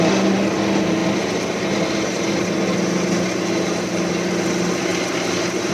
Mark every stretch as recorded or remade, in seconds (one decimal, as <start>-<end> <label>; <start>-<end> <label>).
0.0-5.7 recorded